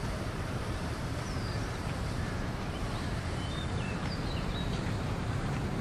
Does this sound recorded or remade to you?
remade